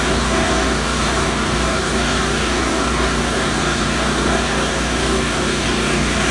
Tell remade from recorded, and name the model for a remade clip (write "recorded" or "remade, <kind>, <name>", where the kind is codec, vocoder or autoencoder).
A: remade, codec, DAC